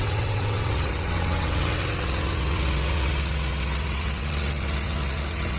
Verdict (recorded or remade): remade